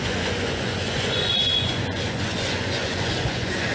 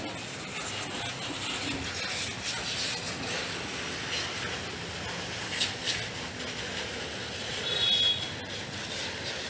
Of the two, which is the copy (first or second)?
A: first